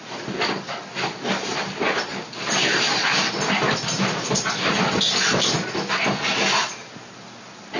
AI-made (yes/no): no